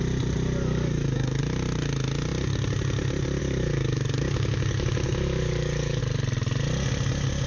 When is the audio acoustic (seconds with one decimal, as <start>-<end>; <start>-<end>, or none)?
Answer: 0.0-0.6; 1.4-3.4; 6.0-7.5